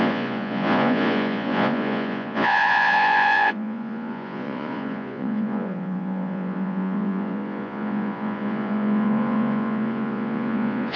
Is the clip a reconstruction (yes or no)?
yes